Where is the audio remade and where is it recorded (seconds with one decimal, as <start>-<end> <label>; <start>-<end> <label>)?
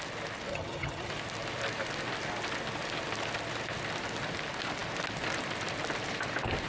0.0-0.5 recorded; 0.5-1.1 remade; 1.1-6.7 recorded